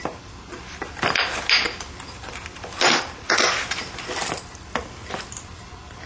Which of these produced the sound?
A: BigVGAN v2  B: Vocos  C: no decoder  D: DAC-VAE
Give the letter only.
C